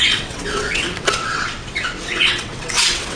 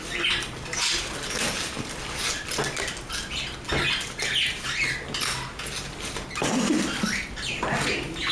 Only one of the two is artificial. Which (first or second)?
first